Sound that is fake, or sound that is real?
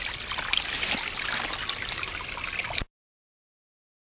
real